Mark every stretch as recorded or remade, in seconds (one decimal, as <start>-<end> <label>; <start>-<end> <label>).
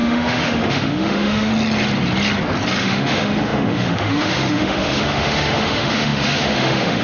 0.0-1.5 remade; 1.5-2.8 recorded; 2.8-7.0 remade